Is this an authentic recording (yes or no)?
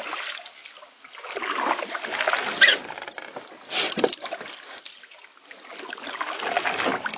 yes